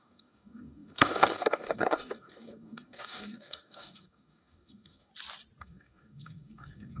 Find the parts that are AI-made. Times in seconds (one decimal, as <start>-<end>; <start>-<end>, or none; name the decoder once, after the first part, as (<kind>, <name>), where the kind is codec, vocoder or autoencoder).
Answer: 0.0-5.1 (codec, DAC); 5.6-7.0